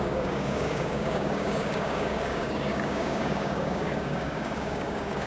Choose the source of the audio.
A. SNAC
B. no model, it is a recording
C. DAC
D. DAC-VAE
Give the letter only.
C